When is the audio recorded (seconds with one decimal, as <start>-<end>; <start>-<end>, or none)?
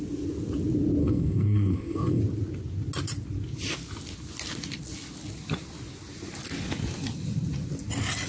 0.0-1.0; 2.2-8.3